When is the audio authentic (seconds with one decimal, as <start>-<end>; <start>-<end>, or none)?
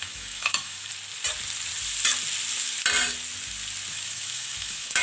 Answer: 0.9-3.9